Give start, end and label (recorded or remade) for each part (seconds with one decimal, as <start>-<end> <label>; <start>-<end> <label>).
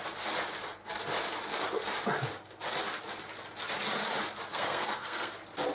0.0-4.5 recorded; 4.5-5.3 remade; 5.3-5.7 recorded